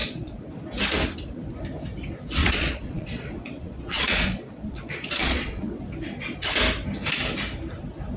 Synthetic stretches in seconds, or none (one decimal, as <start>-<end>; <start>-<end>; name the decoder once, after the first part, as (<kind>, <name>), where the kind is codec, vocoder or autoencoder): 0.0-0.5 (vocoder, Vocos); 2.4-5.8